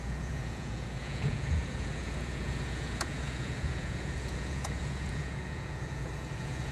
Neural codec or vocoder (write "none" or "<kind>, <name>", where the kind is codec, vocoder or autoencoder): vocoder, Vocos